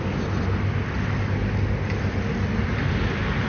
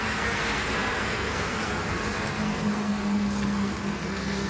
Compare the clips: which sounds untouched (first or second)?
first